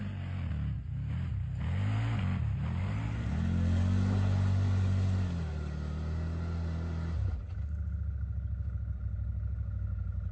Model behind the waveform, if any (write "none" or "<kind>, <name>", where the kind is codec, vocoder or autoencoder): none